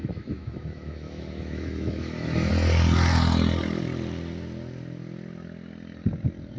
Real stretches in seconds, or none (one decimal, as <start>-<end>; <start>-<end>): 2.5-6.6